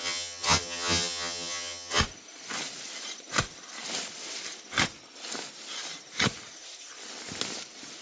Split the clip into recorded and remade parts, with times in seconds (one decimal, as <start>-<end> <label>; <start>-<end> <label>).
0.0-2.0 remade; 2.0-8.0 recorded